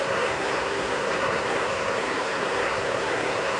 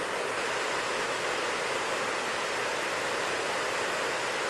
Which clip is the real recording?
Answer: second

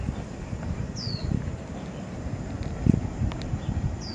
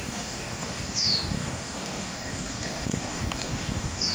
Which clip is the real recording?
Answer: first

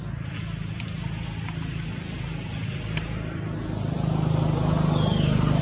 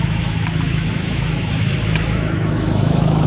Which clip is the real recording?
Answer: first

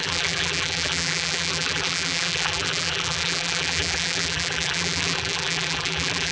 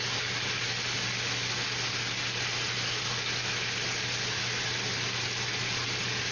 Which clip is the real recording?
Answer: second